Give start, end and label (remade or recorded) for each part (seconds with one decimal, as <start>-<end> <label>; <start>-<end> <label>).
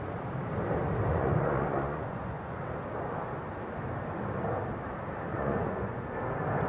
0.0-1.1 recorded; 1.1-2.6 remade; 2.6-5.3 recorded; 5.3-6.0 remade; 6.0-6.7 recorded